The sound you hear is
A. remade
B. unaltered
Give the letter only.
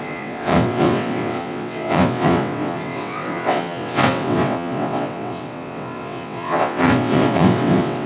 A